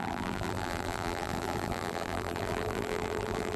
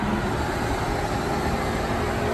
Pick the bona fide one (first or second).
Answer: second